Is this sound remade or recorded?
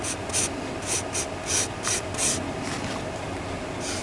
recorded